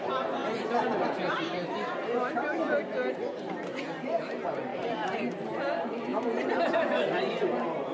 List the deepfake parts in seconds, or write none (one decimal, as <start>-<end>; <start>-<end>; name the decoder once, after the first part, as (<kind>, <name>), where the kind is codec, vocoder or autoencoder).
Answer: none